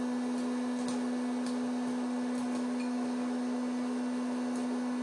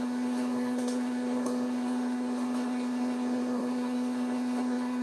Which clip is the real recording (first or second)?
first